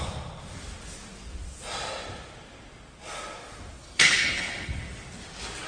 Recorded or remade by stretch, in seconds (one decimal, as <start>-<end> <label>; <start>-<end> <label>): 0.0-3.8 recorded; 3.8-4.8 remade; 4.8-5.7 recorded